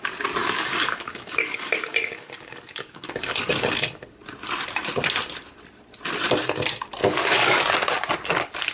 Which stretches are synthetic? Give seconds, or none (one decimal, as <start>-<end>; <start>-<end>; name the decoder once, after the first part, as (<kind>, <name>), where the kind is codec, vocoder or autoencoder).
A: 0.4-3.7 (codec, DAC); 7.0-7.6